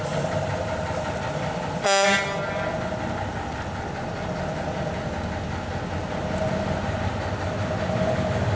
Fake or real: real